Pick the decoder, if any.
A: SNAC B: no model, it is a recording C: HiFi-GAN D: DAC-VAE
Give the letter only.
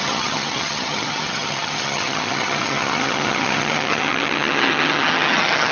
C